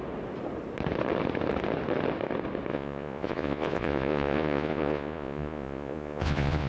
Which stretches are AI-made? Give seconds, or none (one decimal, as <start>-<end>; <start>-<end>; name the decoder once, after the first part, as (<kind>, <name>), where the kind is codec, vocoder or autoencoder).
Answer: 2.7-6.7 (vocoder, Vocos)